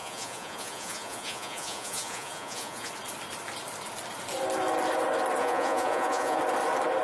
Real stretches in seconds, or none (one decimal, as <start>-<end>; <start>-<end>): 2.9-5.4; 6.4-7.0